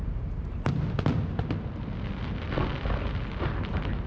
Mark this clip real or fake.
real